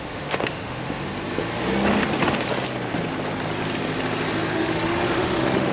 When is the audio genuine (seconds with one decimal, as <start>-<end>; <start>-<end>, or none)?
1.1-4.5